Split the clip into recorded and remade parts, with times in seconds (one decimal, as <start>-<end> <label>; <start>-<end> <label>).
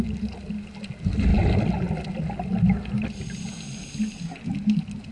0.0-5.1 recorded